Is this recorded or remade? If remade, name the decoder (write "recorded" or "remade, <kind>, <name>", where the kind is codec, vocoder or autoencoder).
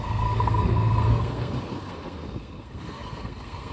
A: remade, codec, SNAC